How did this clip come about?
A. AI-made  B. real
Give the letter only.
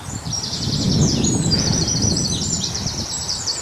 A